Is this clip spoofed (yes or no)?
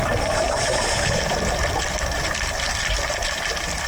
yes